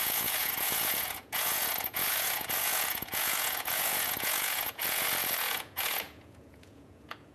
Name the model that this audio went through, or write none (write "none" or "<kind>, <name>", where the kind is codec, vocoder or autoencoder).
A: vocoder, Vocos